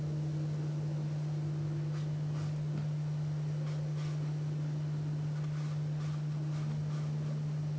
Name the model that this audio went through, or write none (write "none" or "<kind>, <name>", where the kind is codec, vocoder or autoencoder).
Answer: none